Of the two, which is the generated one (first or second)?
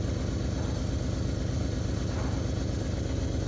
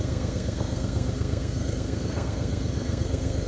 second